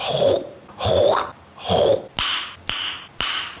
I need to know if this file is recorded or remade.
recorded